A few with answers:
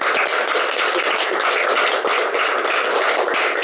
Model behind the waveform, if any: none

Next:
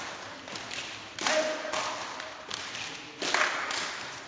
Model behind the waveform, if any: none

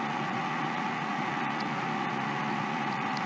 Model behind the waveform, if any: vocoder, Vocos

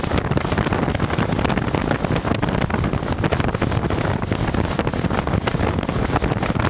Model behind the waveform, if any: none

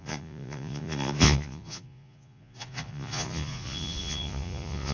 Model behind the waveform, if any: vocoder, Vocos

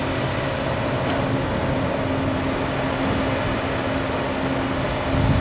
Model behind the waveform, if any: none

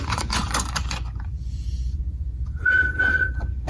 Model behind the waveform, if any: vocoder, Vocos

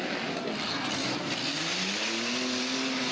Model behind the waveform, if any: none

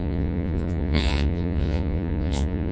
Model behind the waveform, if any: vocoder, Vocos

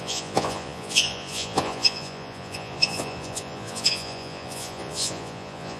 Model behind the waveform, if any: vocoder, Vocos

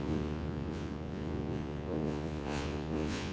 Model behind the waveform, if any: vocoder, Vocos